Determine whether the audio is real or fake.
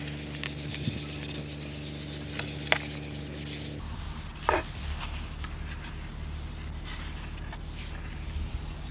real